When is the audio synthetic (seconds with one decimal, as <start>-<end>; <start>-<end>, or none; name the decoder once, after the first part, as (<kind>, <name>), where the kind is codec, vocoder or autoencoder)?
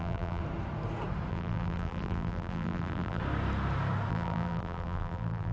0.0-0.4 (vocoder, BigVGAN v2); 1.3-3.2; 4.1-5.5